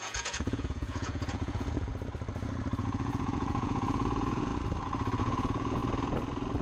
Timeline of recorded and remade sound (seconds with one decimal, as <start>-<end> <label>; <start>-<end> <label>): 0.0-1.9 remade; 1.9-2.8 recorded; 2.8-4.5 remade; 4.5-5.2 recorded; 5.2-5.8 remade; 5.8-6.6 recorded